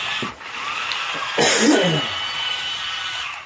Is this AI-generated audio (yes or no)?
no